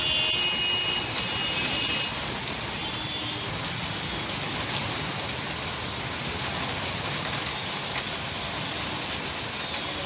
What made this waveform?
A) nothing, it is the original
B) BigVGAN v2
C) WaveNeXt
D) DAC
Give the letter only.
A